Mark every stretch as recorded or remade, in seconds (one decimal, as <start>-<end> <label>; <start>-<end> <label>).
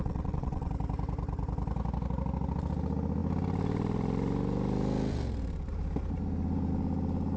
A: 0.0-0.7 remade; 0.7-7.4 recorded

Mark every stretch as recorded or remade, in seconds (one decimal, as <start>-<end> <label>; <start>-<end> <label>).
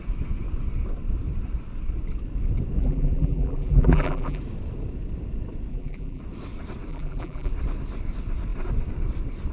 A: 0.0-2.8 recorded; 2.8-4.4 remade; 4.4-5.7 recorded; 5.7-6.2 remade; 6.2-6.9 recorded; 6.9-7.5 remade; 7.5-9.5 recorded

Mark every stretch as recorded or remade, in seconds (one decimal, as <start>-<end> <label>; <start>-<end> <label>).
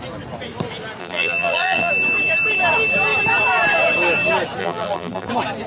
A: 0.0-1.0 recorded; 1.0-1.9 remade; 1.9-4.6 recorded; 4.6-5.3 remade; 5.3-5.7 recorded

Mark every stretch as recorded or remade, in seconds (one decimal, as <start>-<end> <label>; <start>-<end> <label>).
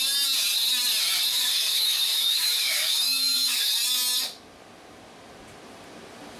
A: 0.0-1.3 recorded; 1.3-3.7 remade; 3.7-6.4 recorded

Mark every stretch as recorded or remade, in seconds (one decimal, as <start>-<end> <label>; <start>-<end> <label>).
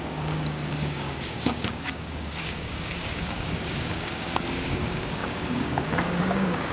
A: 0.0-6.7 remade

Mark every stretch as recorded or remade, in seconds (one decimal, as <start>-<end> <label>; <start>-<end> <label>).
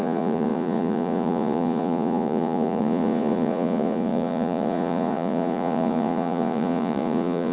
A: 0.0-7.5 remade